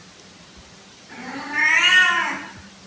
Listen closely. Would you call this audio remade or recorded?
recorded